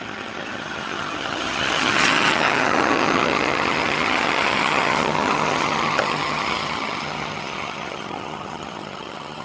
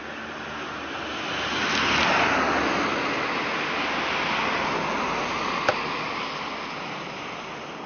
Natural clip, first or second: second